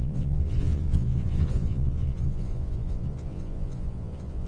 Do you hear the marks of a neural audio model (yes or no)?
yes